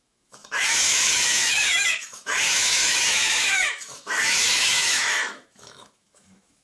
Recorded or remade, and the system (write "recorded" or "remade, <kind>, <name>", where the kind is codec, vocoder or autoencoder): remade, autoencoder, DAC-VAE